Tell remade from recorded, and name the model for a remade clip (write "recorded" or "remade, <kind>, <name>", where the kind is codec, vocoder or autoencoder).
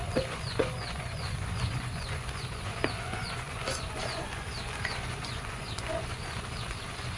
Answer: remade, vocoder, Vocos